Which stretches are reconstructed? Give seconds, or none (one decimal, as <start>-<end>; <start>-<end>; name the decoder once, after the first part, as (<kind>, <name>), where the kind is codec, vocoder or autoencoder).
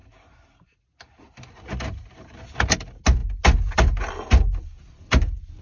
none